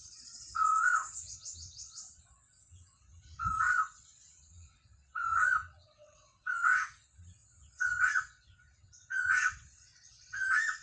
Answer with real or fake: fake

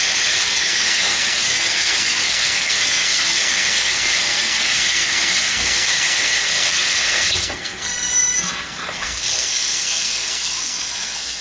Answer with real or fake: fake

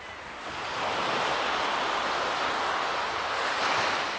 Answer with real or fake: real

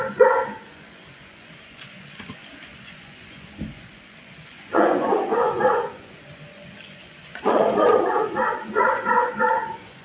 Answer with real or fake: fake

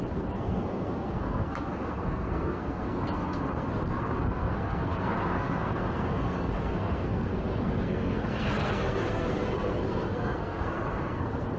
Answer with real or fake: fake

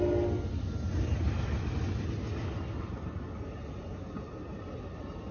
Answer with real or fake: real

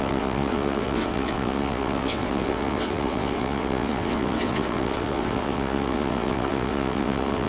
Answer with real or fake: fake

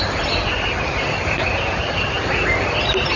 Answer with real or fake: real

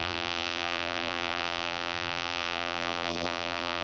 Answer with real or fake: fake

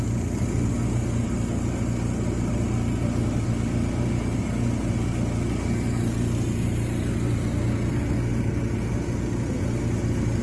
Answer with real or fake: real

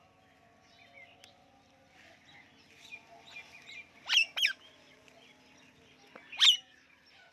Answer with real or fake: real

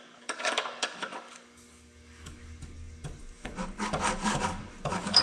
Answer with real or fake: fake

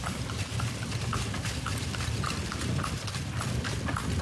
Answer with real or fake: real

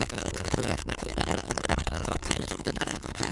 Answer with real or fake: fake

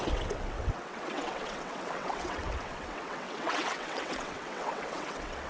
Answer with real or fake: fake